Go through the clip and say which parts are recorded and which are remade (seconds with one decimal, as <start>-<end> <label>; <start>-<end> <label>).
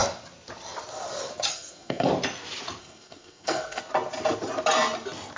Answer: 0.0-1.5 recorded; 1.5-2.1 remade; 2.1-2.8 recorded; 2.8-3.8 remade; 3.8-5.4 recorded